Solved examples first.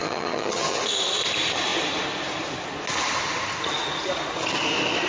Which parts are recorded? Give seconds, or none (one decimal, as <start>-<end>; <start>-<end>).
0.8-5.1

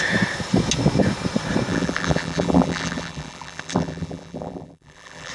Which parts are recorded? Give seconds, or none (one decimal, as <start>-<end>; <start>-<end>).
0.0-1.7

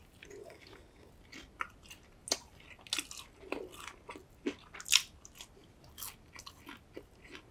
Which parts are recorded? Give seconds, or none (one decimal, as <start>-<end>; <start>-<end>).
0.0-0.4; 1.1-7.5

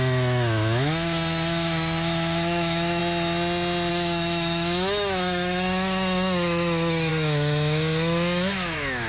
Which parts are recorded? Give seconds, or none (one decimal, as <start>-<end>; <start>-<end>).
3.0-3.9

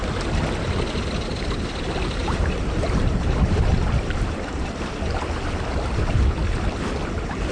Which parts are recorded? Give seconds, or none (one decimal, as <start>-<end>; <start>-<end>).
0.0-2.2; 4.7-7.5